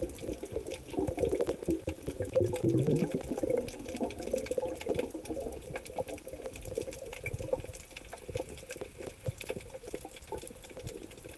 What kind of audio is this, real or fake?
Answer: real